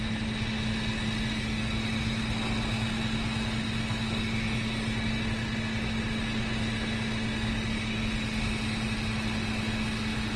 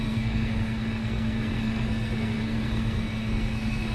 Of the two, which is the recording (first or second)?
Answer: first